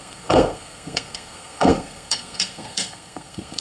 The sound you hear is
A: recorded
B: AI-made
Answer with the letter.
B